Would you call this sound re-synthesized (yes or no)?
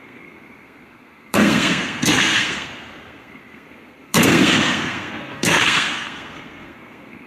yes